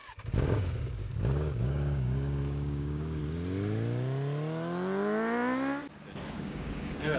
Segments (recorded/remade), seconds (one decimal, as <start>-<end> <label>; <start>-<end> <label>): 0.0-3.2 remade; 3.2-6.3 recorded; 6.3-7.2 remade